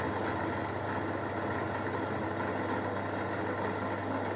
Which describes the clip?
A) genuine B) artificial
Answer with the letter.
A